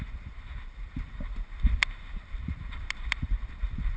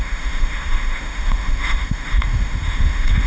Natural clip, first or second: first